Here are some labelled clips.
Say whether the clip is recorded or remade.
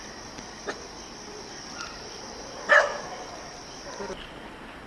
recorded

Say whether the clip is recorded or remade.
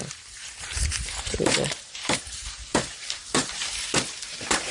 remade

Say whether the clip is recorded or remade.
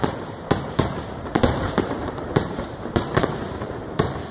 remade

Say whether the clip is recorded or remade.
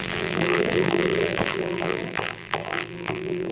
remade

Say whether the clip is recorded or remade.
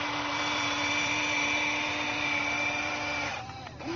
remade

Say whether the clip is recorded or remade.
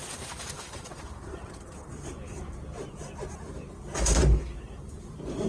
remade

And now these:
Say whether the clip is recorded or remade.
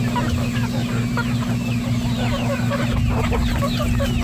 recorded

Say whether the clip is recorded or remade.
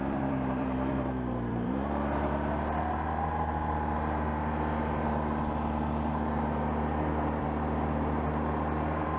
remade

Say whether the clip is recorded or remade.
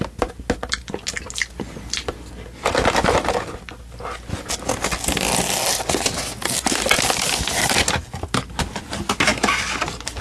recorded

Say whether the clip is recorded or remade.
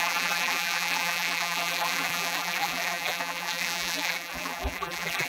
remade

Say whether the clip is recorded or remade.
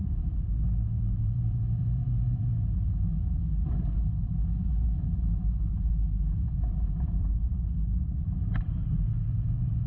remade